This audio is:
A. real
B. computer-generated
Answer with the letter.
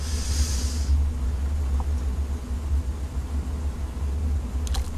A